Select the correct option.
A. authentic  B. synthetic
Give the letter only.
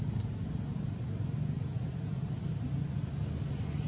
A